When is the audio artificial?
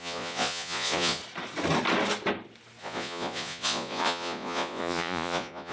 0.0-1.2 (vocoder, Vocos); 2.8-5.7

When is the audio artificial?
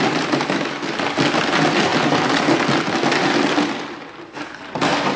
none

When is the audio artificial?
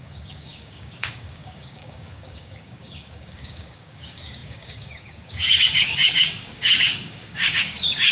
0.0-8.1 (codec, DAC)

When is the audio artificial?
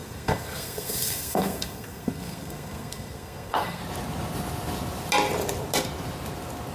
0.0-3.8 (codec, SNAC)